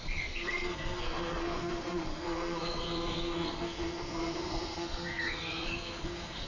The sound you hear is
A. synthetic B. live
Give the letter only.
A